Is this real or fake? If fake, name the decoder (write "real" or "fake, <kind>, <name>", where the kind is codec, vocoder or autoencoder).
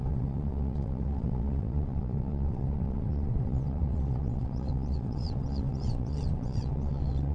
fake, vocoder, WaveNeXt